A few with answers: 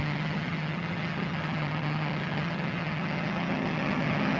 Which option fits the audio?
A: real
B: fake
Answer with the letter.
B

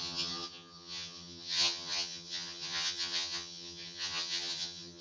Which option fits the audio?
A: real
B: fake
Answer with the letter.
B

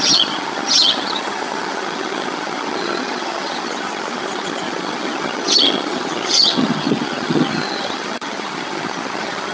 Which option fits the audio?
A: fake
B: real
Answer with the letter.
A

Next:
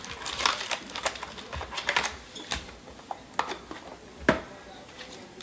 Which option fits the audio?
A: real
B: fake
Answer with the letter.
A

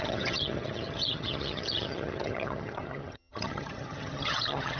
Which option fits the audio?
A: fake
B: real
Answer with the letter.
A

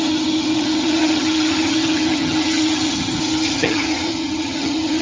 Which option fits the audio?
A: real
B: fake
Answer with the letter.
B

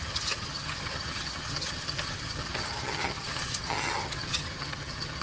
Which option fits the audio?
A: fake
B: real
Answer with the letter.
A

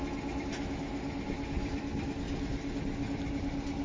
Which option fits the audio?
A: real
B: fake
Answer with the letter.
A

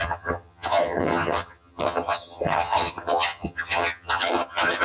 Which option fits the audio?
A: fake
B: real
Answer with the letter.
A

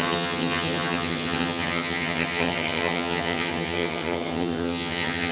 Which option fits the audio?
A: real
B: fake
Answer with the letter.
B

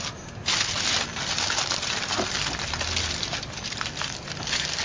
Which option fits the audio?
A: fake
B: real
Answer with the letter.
B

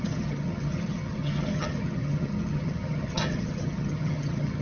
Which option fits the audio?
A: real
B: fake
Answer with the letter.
B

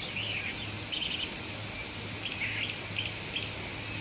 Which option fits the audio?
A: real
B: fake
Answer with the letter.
A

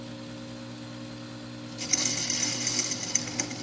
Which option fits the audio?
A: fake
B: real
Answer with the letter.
B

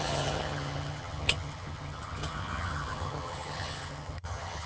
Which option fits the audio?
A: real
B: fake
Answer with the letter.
B